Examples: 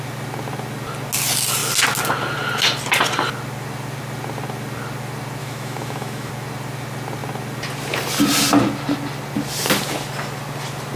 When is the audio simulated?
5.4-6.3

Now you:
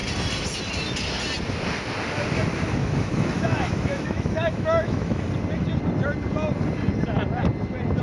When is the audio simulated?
2.8-5.2

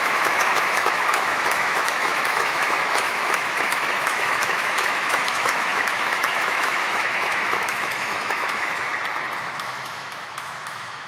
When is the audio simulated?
0.0-8.9; 9.4-11.1